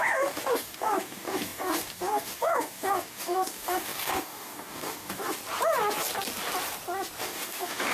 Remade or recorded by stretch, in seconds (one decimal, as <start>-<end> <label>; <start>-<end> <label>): 0.0-5.4 remade; 5.4-7.2 recorded; 7.2-7.9 remade